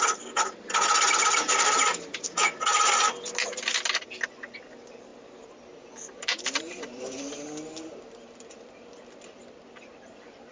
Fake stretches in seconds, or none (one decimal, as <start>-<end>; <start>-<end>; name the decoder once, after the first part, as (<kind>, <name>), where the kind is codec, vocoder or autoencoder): none